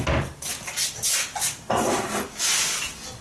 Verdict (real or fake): real